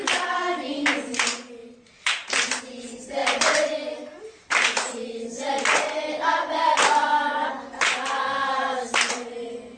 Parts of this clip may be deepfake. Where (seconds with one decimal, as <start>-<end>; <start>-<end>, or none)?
3.2-7.5; 8.4-9.1

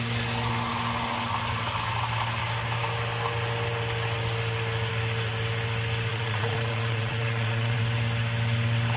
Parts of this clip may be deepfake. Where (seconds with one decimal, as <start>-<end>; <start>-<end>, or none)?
6.1-7.8

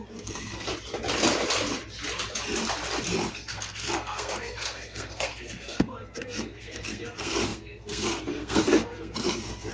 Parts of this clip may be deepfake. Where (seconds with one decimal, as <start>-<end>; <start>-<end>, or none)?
0.0-0.7; 3.3-9.7

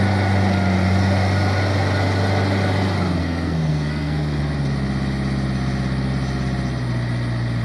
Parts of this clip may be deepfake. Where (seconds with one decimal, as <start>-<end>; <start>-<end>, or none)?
3.2-4.4